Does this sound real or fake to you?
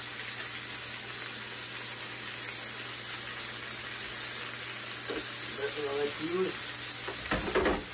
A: real